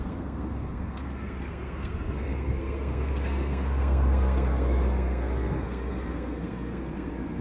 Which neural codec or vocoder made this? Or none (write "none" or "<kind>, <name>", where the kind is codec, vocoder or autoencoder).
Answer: codec, SNAC